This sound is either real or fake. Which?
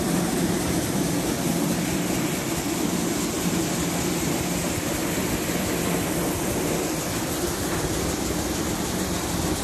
real